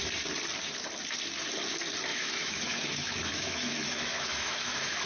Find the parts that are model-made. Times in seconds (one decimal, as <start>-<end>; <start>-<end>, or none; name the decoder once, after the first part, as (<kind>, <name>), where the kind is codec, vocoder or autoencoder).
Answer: 2.1-5.1 (autoencoder, DAC-VAE)